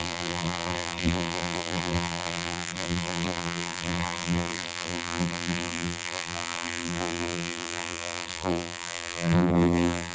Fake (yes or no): yes